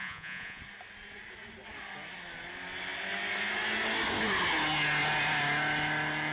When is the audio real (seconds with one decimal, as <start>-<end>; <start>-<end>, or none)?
0.6-6.3